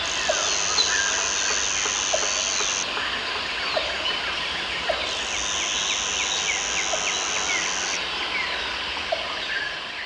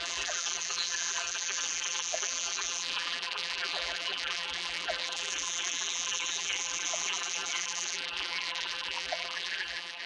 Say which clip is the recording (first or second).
first